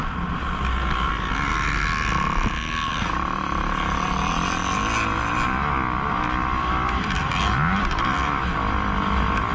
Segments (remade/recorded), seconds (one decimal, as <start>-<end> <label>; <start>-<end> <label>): 0.0-9.5 recorded

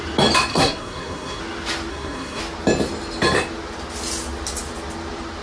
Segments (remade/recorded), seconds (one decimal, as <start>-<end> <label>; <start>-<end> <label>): 0.0-0.5 recorded; 0.5-1.4 remade; 1.4-1.9 recorded; 1.9-2.4 remade; 2.4-5.4 recorded

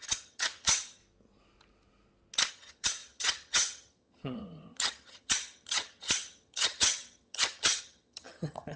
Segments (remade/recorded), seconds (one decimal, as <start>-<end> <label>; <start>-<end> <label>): 0.0-1.0 remade; 1.0-2.5 recorded; 2.5-8.8 remade